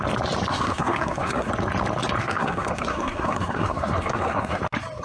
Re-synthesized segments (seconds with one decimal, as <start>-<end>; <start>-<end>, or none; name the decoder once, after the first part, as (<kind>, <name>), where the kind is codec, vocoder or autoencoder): 0.5-1.5 (codec, SNAC); 2.2-4.6